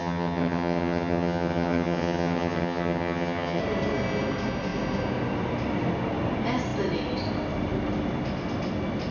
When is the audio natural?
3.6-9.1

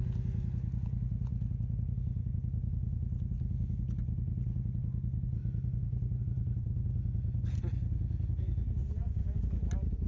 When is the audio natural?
0.0-8.8; 9.4-10.1

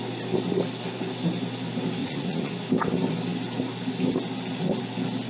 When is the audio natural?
0.0-2.0; 2.5-5.3

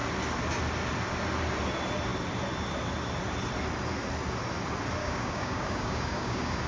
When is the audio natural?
0.0-5.0

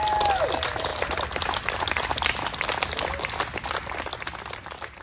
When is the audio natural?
0.0-0.9; 1.9-4.1

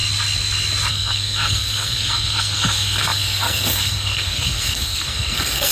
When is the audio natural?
0.0-0.9

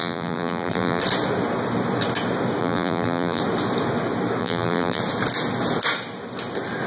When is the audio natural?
1.0-2.6; 3.4-4.4; 5.0-6.9